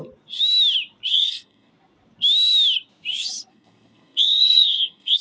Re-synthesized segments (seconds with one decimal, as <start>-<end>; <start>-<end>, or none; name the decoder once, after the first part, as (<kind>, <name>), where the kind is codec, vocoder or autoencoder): 1.1-1.7 (codec, SNAC); 3.5-5.2